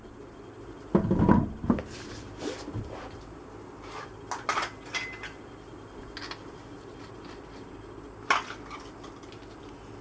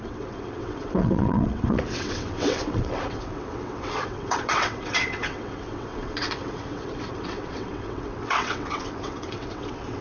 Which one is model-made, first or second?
second